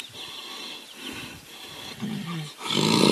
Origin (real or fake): real